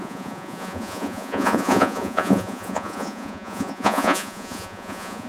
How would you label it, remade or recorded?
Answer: remade